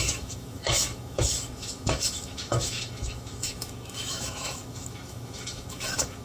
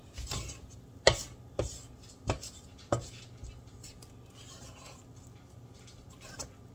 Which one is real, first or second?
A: second